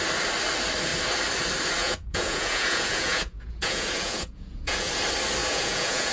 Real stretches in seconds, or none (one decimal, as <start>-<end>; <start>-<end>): 0.0-1.8; 4.9-5.4

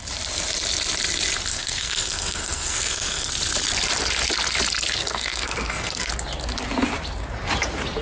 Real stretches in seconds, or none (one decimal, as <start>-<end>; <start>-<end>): 0.0-1.5; 3.3-5.0; 6.1-8.0

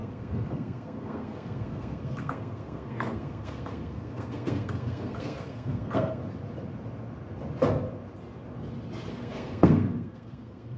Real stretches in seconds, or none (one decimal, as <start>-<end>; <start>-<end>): 6.2-9.1